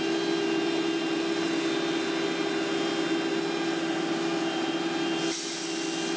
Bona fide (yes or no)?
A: yes